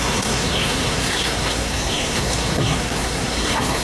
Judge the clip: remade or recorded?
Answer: remade